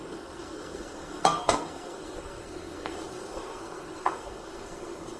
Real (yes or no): no